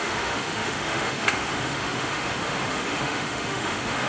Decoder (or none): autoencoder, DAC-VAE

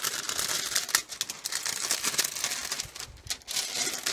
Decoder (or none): none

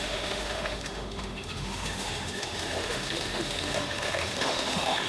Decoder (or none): autoencoder, DAC-VAE